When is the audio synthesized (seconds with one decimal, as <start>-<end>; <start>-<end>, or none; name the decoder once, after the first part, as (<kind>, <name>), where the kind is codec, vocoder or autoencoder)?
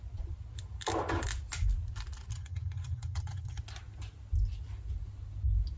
2.3-3.6 (vocoder, HiFi-GAN)